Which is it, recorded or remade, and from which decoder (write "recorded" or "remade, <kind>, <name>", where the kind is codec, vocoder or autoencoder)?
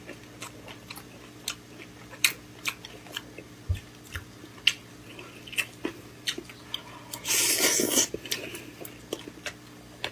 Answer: recorded